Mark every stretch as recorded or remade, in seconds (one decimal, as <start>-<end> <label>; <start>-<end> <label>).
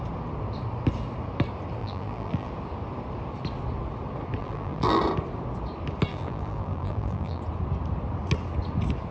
0.0-1.8 recorded; 1.8-2.5 remade; 2.5-4.4 recorded; 4.4-5.0 remade; 5.0-6.1 recorded; 6.1-7.4 remade; 7.4-9.1 recorded